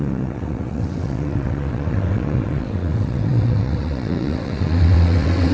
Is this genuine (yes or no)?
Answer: no